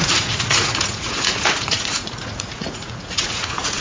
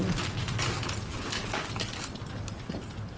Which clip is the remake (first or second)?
first